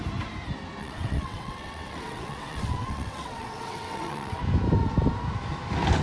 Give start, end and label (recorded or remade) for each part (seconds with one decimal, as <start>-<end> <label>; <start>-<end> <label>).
0.0-0.8 recorded; 0.8-4.4 remade; 4.4-6.0 recorded